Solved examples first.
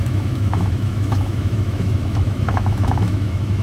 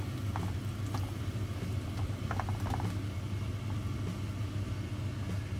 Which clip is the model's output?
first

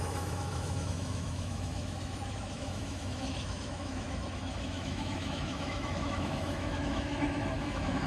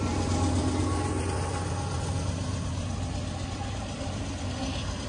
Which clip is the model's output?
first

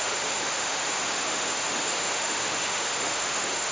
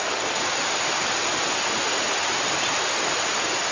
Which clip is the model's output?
first